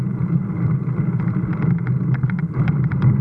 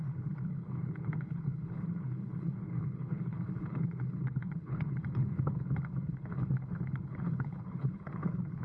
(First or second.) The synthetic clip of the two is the second